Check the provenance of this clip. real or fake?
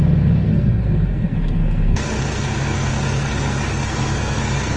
fake